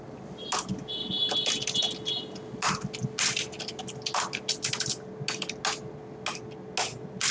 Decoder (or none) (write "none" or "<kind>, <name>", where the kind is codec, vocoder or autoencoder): none